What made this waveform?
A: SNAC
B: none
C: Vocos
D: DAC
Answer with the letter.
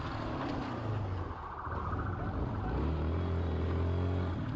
B